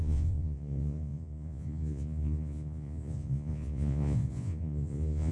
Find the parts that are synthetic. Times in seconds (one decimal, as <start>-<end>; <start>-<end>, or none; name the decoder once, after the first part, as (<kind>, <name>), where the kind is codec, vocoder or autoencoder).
0.0-5.3 (vocoder, Vocos)